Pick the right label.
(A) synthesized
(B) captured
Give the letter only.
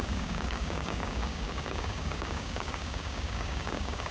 A